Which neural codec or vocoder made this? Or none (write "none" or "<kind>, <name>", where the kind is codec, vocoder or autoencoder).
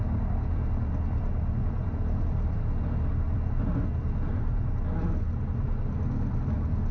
none